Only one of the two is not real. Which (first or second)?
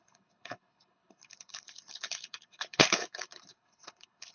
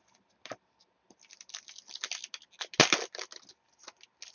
first